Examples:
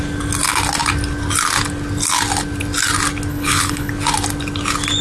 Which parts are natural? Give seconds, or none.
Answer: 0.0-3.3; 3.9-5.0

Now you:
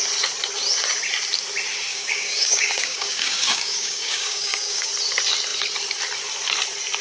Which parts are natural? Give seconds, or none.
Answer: 0.0-1.9; 4.9-7.0

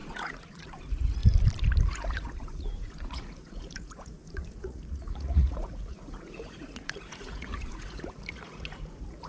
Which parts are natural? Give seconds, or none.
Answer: 1.2-1.9